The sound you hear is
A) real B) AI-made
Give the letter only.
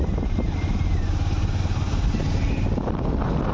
A